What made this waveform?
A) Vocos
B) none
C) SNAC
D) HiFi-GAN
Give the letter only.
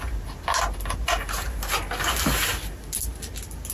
B